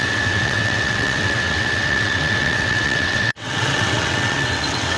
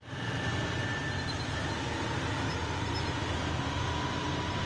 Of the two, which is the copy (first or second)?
first